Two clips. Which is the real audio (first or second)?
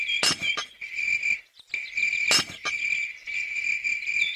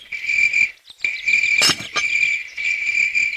first